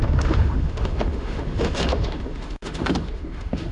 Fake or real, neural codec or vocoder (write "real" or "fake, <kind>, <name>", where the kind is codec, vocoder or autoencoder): fake, autoencoder, DAC-VAE